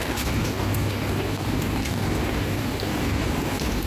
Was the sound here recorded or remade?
remade